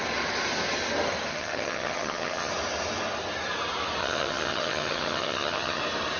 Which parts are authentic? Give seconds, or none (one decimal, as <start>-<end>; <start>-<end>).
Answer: 0.0-1.3; 2.5-4.0; 5.8-6.2

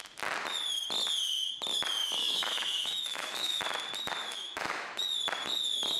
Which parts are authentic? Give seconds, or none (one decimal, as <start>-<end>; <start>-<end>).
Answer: 0.0-2.0; 3.6-4.2; 5.0-6.0

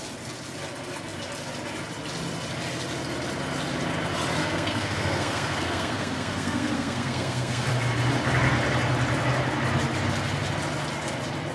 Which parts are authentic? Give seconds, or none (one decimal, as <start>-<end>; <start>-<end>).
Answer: 0.0-4.4; 7.7-11.5

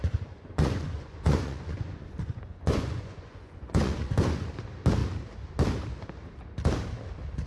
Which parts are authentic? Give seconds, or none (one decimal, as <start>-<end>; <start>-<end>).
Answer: 4.5-7.5

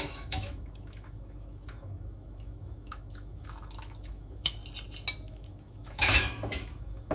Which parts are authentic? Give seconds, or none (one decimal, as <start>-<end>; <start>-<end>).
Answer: 4.6-5.3

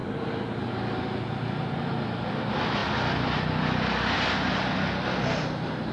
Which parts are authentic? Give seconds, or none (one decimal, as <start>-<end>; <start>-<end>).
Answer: 0.0-5.9